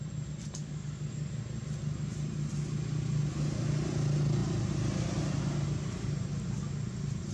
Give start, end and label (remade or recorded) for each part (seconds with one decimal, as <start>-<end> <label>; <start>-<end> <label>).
0.0-0.6 recorded; 0.6-1.4 remade; 1.4-7.3 recorded